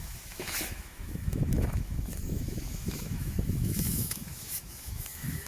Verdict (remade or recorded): remade